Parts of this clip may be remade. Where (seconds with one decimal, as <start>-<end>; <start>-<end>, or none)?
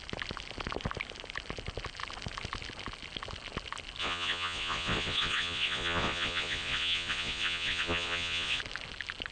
4.0-8.6